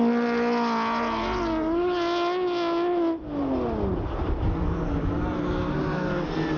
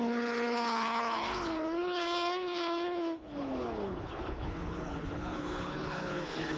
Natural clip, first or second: first